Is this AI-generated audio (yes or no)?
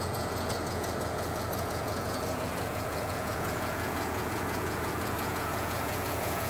yes